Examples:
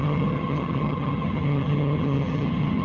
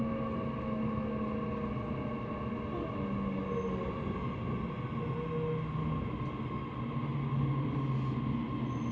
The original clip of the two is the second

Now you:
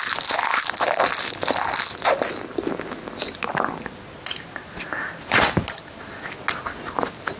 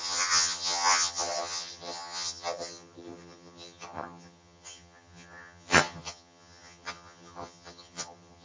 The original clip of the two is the first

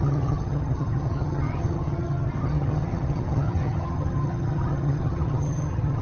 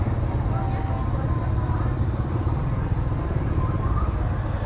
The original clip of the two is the second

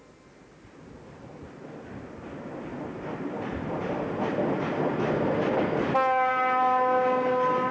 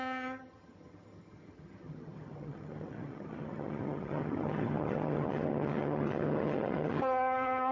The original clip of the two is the first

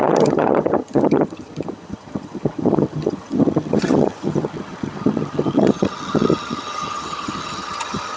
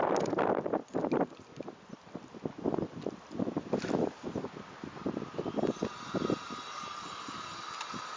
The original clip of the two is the second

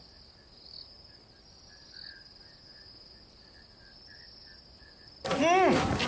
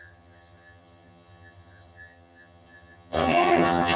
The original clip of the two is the first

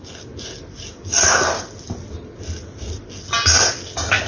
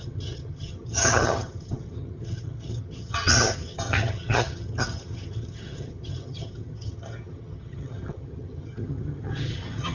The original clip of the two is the first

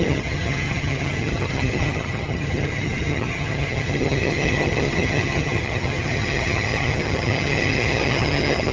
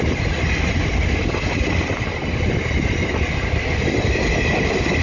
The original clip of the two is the second